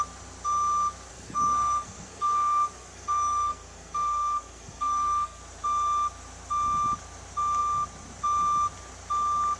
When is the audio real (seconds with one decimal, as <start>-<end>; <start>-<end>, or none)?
0.0-1.1; 5.4-9.6

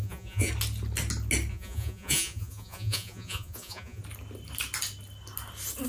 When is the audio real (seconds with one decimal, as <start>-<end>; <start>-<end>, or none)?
0.5-1.5; 4.0-5.9

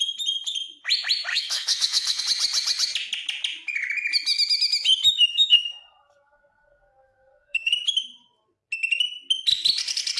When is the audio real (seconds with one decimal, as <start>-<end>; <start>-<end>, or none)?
0.0-1.3; 2.2-5.3; 7.7-10.2

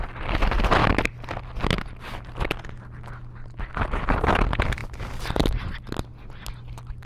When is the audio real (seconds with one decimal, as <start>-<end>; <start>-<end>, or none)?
0.0-7.1

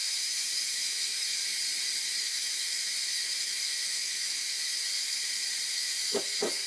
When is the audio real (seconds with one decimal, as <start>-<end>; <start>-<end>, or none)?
1.4-2.2; 5.2-5.7

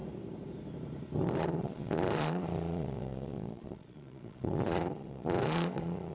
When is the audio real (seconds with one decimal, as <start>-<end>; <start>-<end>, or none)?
0.0-1.4

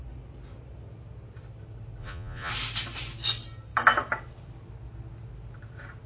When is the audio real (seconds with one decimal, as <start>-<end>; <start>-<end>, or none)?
0.0-2.0; 2.5-6.1